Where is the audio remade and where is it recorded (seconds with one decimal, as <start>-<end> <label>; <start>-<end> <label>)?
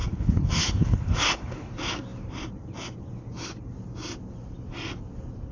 0.0-1.7 remade; 1.7-5.5 recorded